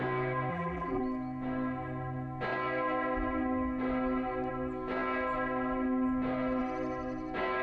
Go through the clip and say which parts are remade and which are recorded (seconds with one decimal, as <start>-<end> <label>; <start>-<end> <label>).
0.0-0.5 recorded; 0.5-1.0 remade; 1.0-7.6 recorded